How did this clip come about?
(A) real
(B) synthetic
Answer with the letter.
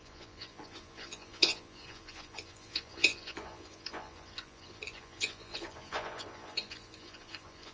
B